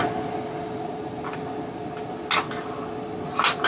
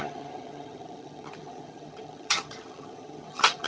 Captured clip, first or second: first